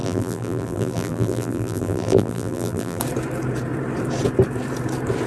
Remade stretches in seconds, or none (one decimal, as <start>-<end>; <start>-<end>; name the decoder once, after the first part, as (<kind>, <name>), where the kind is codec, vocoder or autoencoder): 0.0-3.0 (vocoder, BigVGAN v2)